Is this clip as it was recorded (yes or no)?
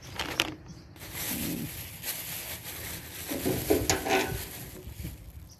yes